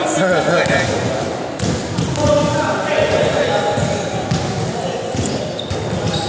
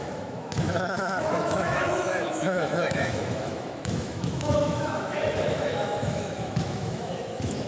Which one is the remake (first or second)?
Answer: second